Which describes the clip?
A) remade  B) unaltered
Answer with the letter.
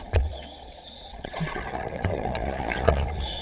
A